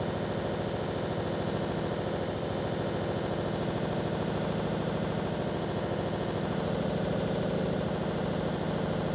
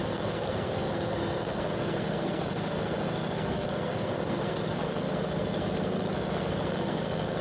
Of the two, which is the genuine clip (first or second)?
first